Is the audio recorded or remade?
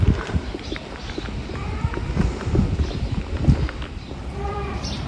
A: remade